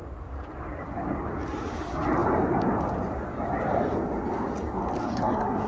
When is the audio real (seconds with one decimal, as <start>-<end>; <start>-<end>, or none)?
0.0-5.0